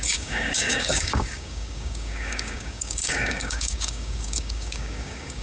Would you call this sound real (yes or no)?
no